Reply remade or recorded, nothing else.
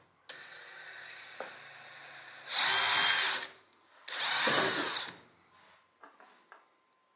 recorded